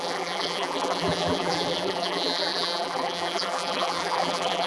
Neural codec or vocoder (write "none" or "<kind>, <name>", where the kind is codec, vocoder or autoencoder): vocoder, BigVGAN v2